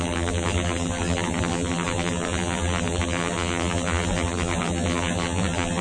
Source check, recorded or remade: remade